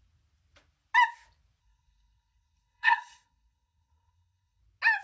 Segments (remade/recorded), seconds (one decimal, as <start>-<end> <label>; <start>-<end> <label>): 0.0-1.6 recorded; 1.6-4.6 remade; 4.6-5.0 recorded